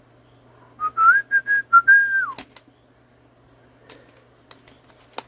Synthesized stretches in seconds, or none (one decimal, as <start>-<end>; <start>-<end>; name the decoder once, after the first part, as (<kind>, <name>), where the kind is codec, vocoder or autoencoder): none